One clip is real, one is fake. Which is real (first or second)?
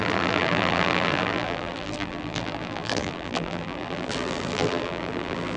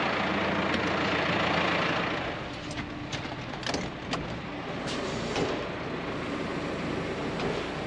second